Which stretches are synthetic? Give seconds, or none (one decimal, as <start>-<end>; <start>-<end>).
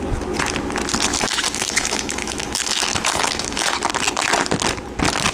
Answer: 1.1-3.7